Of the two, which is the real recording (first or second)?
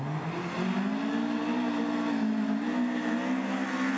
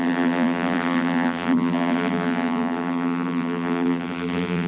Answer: first